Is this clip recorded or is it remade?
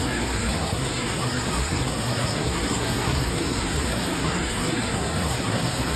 remade